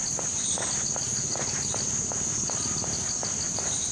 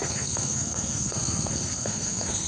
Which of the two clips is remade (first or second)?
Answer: second